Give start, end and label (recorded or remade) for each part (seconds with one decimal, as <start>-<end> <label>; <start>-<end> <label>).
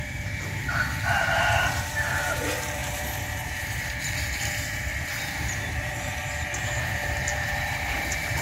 0.0-8.4 remade